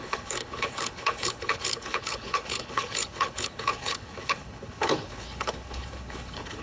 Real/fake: fake